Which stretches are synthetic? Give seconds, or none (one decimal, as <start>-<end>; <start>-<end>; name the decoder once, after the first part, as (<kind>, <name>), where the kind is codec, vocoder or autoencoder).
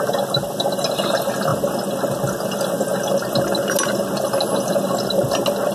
none